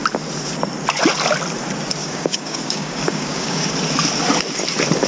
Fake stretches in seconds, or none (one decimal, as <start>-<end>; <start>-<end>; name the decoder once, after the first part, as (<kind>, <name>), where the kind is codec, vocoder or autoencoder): 2.0-3.7 (codec, DAC)